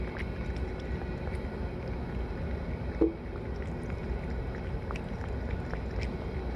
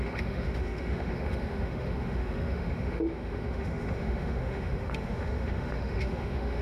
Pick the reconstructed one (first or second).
second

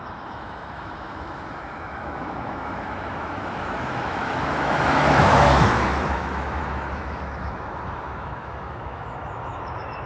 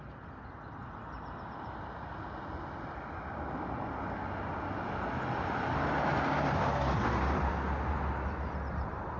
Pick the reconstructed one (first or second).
first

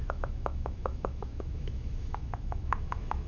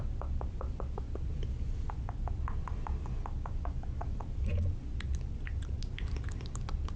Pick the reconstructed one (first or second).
first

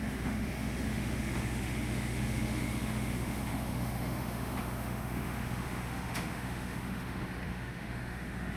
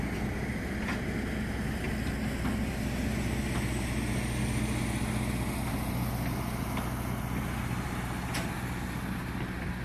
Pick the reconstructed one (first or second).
first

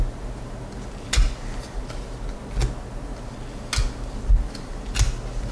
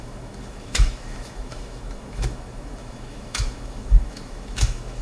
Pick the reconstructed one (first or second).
second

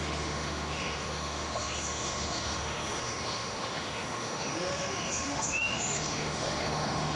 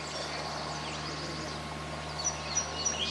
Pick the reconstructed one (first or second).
first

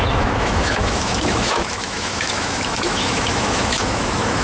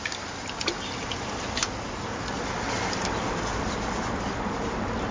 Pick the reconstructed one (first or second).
first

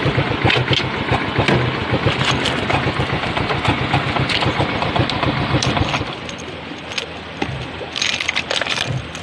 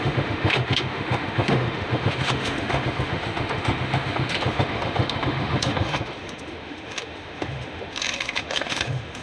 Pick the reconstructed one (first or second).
second